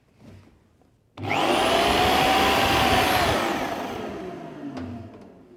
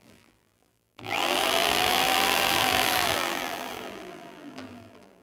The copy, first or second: second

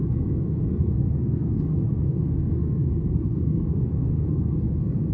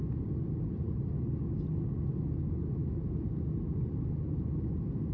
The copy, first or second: first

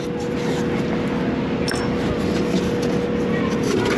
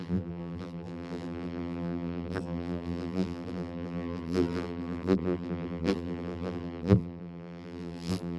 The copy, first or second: second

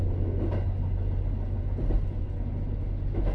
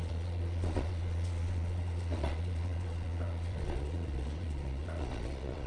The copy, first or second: second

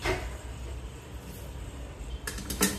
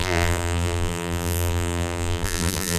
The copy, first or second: second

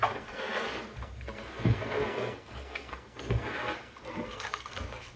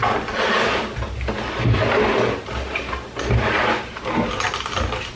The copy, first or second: first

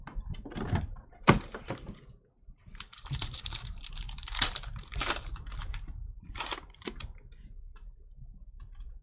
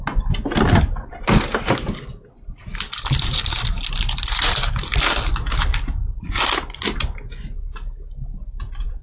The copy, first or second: first